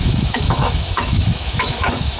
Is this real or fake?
fake